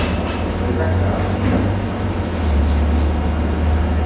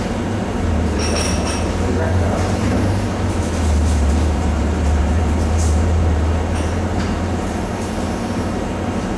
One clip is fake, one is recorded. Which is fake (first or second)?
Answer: second